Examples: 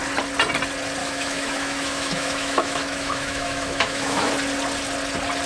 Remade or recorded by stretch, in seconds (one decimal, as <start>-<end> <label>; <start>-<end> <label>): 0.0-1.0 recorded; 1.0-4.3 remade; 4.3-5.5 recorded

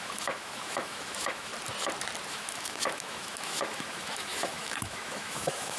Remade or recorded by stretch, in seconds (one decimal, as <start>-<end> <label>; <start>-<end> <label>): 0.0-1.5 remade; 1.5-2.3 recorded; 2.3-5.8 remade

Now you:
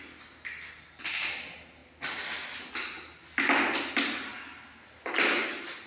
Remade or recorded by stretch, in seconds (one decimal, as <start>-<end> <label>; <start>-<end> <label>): 0.0-5.9 recorded